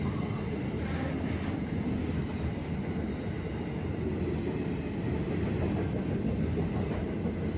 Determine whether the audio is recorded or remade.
recorded